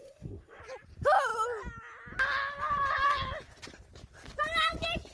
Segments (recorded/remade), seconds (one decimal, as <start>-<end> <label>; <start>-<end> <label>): 0.0-0.6 remade; 0.6-5.1 recorded